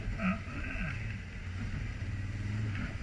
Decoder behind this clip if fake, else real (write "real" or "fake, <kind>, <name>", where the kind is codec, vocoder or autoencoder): real